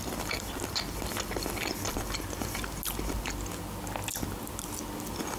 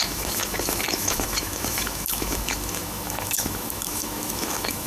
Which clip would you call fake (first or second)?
second